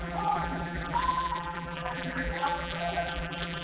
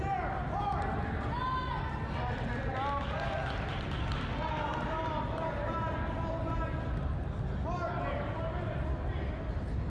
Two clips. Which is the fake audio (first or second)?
first